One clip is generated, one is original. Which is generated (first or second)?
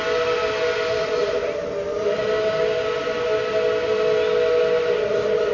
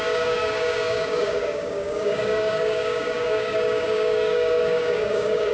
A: second